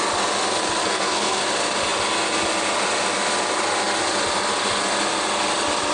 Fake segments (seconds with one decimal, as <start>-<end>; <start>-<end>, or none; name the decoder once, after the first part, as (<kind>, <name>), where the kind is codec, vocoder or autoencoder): 0.8-1.4 (codec, SNAC)